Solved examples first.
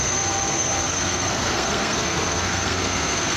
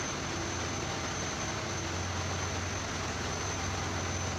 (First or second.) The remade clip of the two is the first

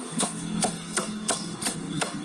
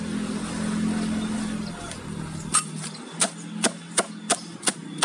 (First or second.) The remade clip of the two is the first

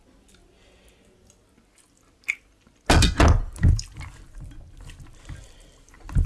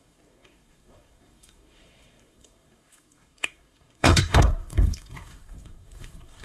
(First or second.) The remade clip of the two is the second